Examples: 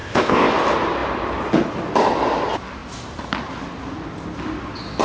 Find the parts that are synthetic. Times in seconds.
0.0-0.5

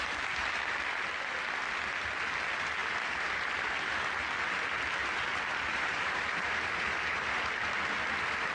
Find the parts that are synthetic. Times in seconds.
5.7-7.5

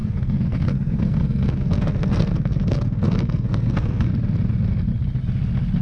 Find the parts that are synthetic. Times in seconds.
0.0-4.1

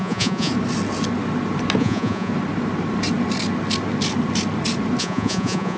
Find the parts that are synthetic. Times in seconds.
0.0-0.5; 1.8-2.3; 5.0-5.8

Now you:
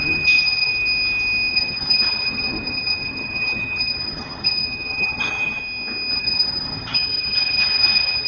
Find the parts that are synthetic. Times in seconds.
0.0-0.7; 1.5-5.6; 6.1-8.3

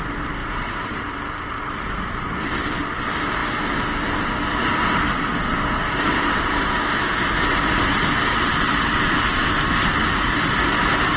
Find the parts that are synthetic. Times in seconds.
0.4-3.0; 8.5-10.0

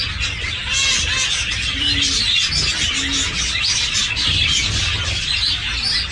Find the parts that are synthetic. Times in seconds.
none